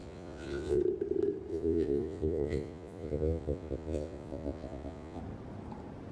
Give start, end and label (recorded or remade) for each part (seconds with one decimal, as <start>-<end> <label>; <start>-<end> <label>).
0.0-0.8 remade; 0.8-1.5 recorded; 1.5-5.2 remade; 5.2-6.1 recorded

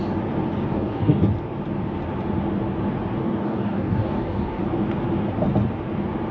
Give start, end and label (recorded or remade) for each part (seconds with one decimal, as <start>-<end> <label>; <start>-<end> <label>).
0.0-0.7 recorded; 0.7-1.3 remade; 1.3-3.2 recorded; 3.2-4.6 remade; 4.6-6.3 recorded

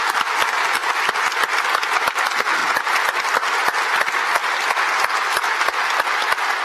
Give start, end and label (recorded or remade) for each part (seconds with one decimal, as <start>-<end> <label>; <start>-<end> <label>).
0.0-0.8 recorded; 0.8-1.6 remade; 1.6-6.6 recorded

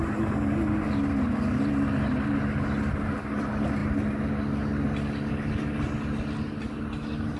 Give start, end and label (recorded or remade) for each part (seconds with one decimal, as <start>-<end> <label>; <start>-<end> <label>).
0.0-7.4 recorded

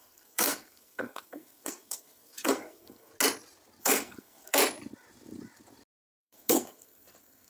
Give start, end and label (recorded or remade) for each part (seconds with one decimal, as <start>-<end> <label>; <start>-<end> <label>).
0.0-3.1 remade; 3.1-3.8 recorded; 3.8-4.6 remade; 4.6-6.1 recorded; 6.1-7.5 remade